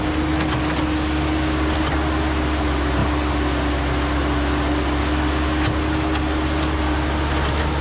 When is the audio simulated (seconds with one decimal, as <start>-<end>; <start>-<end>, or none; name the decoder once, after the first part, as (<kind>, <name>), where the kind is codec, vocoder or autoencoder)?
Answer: none

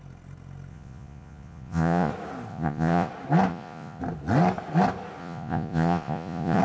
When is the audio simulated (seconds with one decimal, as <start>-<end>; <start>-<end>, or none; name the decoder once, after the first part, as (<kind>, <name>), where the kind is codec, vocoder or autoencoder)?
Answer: 0.7-2.1 (vocoder, Vocos); 2.5-3.1; 3.5-4.0; 5.2-6.6